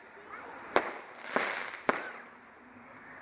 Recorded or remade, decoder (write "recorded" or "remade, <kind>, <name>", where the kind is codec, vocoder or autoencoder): recorded